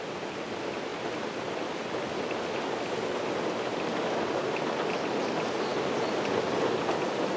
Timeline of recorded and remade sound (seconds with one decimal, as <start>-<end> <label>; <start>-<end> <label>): 0.0-7.4 recorded